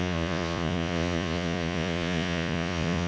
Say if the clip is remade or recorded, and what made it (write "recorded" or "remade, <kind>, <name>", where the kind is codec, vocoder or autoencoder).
remade, vocoder, Vocos